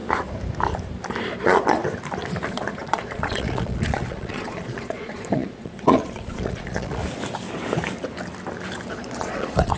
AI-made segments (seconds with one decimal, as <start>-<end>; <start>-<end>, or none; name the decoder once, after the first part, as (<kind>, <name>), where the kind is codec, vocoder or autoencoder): 1.4-1.8 (vocoder, Vocos); 2.5-7.0; 8.9-9.8